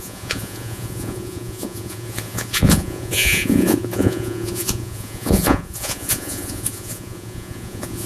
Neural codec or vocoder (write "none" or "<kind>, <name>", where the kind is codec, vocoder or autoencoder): vocoder, Vocos